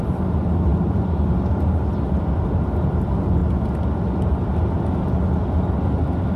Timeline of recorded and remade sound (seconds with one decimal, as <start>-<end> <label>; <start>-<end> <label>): 0.0-0.7 recorded; 0.7-1.6 remade; 1.6-6.4 recorded